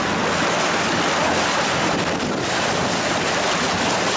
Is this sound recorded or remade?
recorded